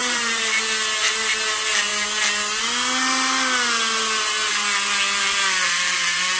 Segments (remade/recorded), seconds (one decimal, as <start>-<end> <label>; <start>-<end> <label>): 0.0-0.6 remade; 0.6-6.4 recorded